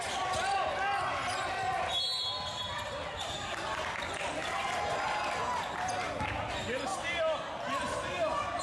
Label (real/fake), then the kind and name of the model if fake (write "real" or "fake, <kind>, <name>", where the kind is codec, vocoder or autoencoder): real